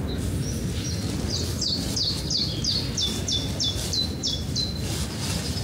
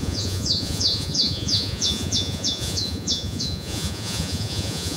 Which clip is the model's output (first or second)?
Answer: second